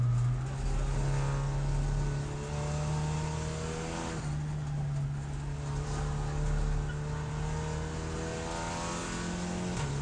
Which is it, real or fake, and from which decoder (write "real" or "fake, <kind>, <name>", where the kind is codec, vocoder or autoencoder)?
real